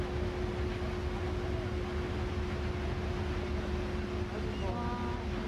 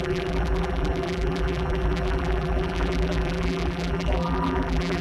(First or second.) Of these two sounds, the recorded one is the first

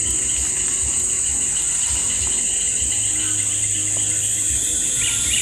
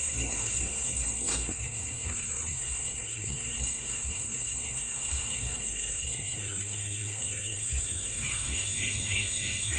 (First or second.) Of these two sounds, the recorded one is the first